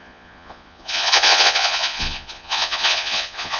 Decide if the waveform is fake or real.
fake